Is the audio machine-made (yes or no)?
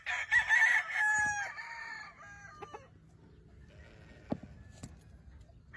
no